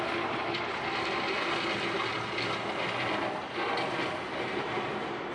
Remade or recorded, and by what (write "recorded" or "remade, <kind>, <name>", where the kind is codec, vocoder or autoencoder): recorded